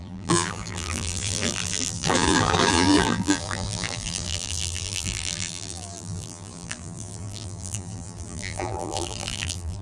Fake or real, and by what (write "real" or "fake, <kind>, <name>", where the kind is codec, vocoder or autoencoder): fake, vocoder, BigVGAN v2